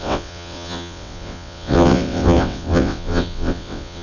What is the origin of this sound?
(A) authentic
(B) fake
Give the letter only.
B